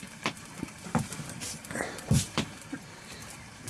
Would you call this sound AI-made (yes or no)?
yes